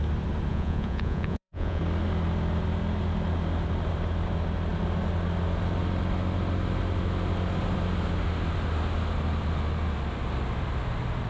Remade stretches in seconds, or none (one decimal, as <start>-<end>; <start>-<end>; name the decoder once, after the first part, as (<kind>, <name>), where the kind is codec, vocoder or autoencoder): 0.5-1.8 (vocoder, Vocos)